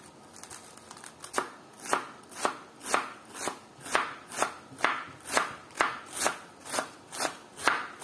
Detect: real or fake real